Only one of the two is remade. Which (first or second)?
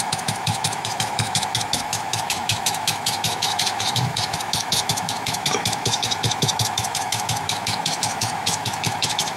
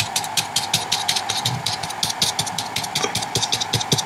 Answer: first